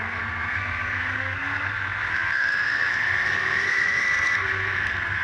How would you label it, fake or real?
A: fake